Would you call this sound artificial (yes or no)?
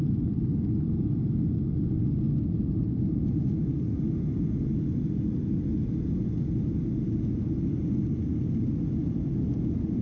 no